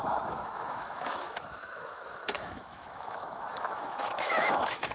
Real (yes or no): no